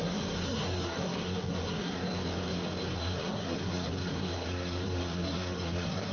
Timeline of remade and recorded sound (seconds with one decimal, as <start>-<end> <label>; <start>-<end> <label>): 0.0-2.1 remade; 2.1-3.0 recorded; 3.0-6.1 remade